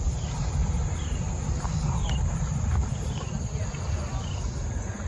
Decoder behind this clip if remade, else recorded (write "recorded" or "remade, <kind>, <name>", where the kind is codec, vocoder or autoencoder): recorded